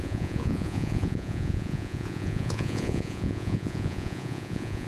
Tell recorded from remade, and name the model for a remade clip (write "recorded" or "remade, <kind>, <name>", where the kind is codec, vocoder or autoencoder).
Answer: remade, vocoder, Vocos